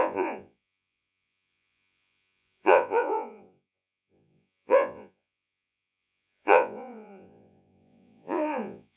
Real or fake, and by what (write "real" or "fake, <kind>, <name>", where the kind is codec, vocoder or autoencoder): fake, vocoder, Vocos